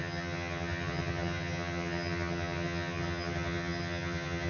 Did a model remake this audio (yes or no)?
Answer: yes